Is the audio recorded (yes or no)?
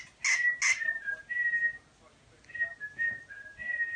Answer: yes